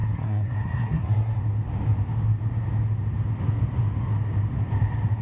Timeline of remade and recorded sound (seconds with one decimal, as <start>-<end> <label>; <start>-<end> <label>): 0.0-1.4 remade; 1.4-5.2 recorded